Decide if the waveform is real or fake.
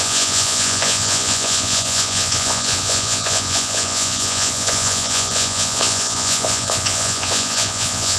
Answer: fake